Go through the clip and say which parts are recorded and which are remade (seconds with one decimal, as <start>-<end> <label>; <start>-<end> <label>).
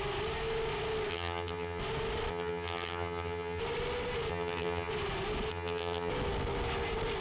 0.0-1.1 recorded; 1.1-1.8 remade; 1.8-2.3 recorded; 2.3-3.6 remade; 3.6-4.3 recorded; 4.3-4.9 remade; 4.9-5.5 recorded; 5.5-6.1 remade; 6.1-7.2 recorded